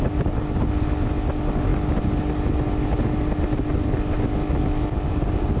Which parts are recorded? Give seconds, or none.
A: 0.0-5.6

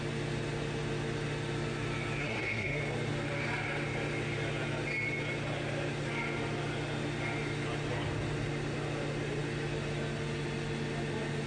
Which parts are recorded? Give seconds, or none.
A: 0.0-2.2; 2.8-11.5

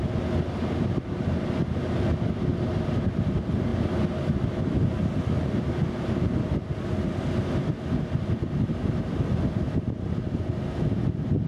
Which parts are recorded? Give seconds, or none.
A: 0.0-11.5